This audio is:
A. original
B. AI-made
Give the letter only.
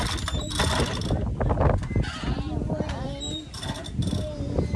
A